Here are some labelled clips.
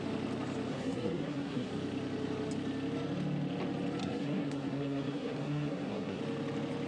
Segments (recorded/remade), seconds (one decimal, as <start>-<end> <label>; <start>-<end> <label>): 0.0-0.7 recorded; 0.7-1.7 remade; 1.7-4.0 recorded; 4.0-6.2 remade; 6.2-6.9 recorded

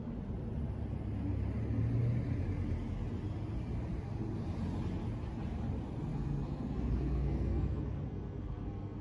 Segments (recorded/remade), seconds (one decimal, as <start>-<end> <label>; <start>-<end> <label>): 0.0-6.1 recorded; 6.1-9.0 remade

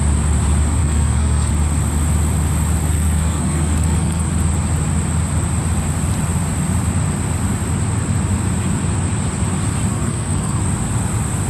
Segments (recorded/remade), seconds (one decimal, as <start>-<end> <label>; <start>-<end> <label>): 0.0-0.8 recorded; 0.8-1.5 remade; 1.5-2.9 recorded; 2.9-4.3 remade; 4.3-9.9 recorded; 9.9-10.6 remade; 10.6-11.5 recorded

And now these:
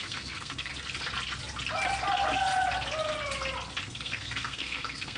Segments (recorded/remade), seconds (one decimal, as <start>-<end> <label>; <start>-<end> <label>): 0.0-0.7 remade; 0.7-3.8 recorded; 3.8-5.2 remade

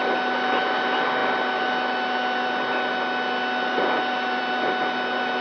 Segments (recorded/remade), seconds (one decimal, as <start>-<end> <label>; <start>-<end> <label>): 0.0-5.4 recorded